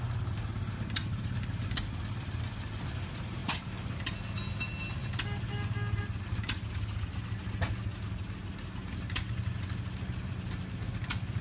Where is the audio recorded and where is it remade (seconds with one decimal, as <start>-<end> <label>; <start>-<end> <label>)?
0.0-11.4 recorded